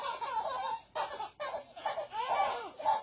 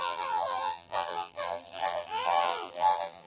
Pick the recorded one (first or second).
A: first